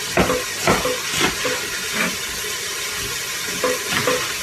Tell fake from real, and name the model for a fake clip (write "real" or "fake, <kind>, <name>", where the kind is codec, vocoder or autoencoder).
real